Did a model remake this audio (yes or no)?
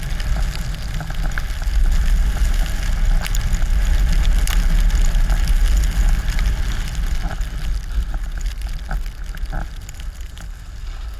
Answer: no